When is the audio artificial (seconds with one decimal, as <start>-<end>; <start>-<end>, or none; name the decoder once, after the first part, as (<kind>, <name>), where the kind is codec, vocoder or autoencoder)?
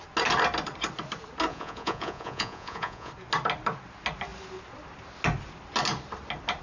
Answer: 1.5-3.1 (vocoder, Vocos)